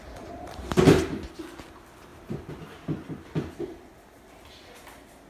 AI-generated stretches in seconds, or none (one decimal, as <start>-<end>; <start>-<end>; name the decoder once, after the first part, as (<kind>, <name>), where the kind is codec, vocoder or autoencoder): 2.1-3.6 (vocoder, BigVGAN v2)